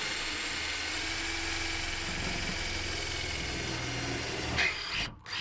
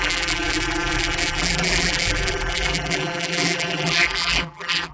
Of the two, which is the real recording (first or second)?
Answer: first